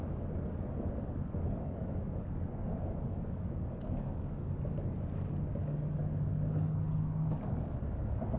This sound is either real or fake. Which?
fake